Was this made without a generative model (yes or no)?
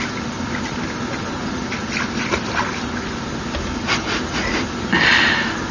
yes